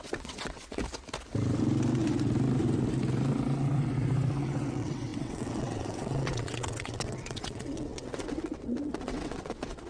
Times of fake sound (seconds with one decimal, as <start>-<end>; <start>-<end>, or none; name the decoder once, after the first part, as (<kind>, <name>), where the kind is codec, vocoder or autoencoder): 0.0-0.8 (vocoder, WaveNeXt); 4.4-9.9